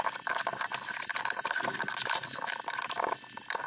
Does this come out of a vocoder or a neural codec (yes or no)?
yes